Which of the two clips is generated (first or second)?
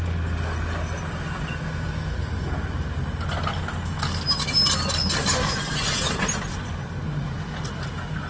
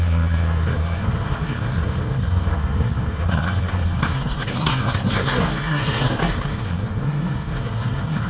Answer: second